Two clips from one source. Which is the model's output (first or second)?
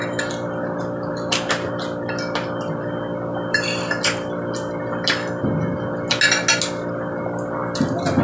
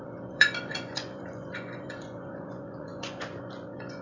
second